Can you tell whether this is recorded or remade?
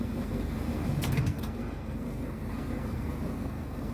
remade